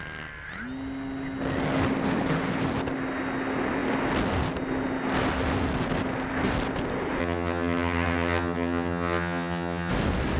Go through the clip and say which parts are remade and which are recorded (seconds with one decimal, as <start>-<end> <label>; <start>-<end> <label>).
0.0-7.2 recorded; 7.2-9.9 remade; 9.9-10.4 recorded